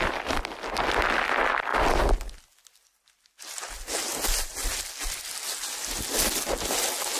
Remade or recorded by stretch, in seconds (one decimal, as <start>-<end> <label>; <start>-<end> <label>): 0.0-7.2 recorded